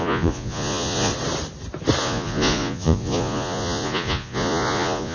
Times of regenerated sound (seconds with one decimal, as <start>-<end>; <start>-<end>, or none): 0.0-1.1; 2.0-5.1